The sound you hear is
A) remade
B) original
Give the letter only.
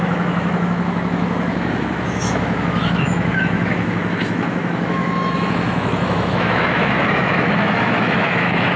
A